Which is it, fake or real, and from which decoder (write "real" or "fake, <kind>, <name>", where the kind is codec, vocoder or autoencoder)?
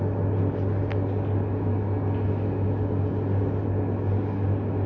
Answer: real